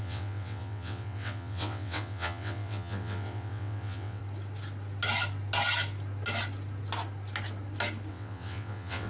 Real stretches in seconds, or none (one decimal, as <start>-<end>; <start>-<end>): 4.2-8.1